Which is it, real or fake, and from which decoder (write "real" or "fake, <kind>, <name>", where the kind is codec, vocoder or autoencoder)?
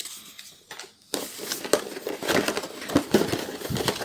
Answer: real